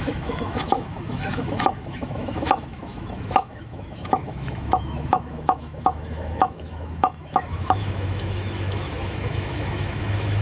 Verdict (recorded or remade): remade